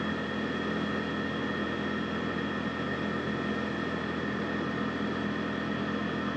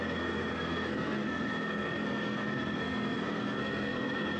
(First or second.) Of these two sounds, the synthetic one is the second